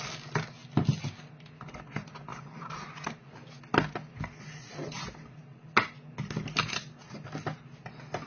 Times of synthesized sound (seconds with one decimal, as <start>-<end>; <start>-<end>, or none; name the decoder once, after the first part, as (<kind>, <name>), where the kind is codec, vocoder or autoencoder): 2.3-2.9 (vocoder, BigVGAN v2); 4.8-5.6